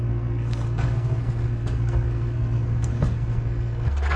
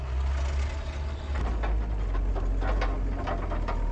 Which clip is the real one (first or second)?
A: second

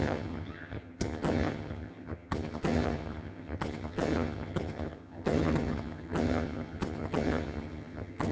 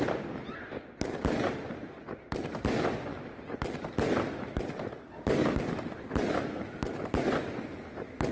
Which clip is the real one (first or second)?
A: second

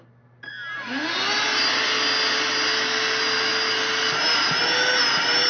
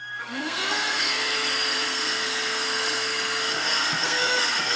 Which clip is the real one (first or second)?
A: first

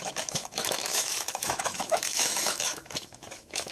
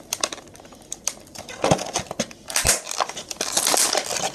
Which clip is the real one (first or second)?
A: second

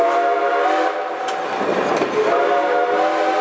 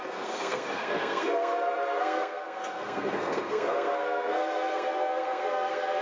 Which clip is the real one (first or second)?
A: first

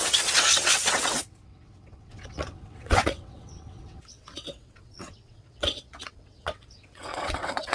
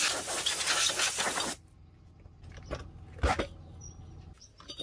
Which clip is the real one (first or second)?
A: second